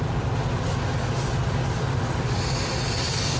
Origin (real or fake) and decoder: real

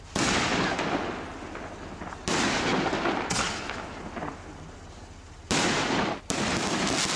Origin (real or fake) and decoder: real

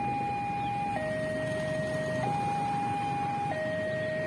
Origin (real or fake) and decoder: real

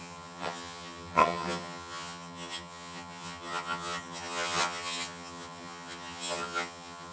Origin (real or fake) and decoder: fake, vocoder, HiFi-GAN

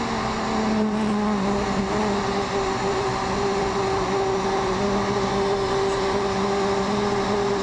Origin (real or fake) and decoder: real